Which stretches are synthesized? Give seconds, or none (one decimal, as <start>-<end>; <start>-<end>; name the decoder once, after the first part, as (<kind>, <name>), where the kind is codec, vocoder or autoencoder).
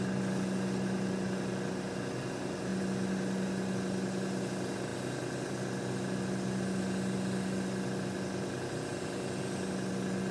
none